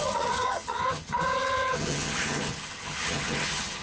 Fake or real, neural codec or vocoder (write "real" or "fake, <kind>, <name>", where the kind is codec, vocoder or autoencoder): fake, vocoder, HiFi-GAN